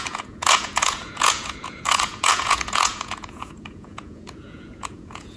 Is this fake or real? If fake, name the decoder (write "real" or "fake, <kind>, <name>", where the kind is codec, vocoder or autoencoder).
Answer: fake, vocoder, Vocos